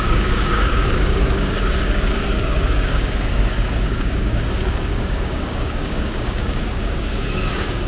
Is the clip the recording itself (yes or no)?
no